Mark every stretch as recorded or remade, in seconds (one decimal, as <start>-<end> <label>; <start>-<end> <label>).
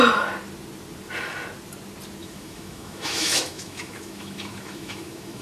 0.0-2.2 recorded; 2.2-5.4 remade